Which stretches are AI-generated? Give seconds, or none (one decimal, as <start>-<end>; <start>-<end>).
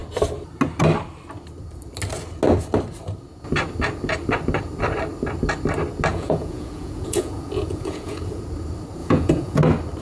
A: 6.1-8.4; 9.0-9.6